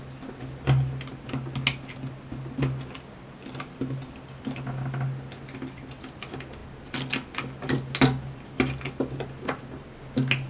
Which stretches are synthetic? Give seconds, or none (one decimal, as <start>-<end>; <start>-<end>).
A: none